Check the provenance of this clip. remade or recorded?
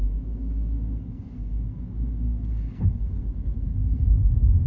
remade